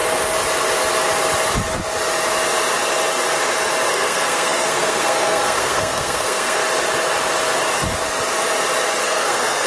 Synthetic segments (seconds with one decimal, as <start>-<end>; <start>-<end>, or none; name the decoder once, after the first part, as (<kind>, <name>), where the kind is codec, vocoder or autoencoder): 3.9-6.6 (codec, SNAC); 9.0-9.7